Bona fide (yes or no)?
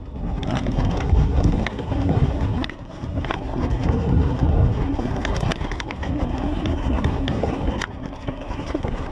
no